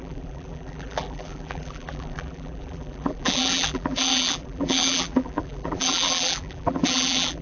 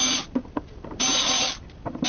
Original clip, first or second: second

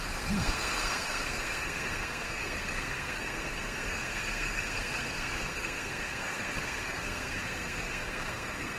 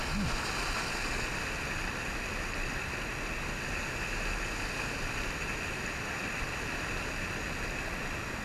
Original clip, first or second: second